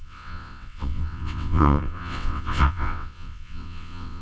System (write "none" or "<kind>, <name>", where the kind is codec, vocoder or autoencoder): vocoder, WaveNeXt